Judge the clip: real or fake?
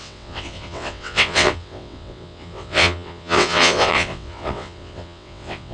fake